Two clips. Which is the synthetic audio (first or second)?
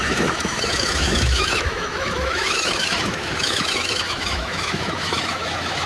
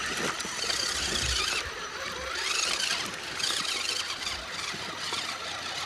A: first